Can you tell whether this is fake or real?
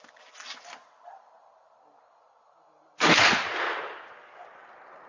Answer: real